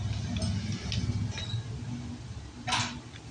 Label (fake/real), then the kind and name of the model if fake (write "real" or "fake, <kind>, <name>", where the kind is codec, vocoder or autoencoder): real